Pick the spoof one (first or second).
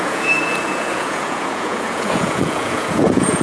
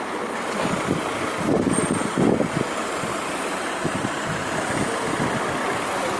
first